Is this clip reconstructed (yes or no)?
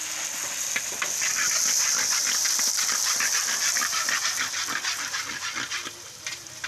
no